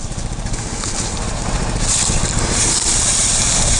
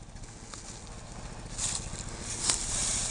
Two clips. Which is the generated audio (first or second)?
first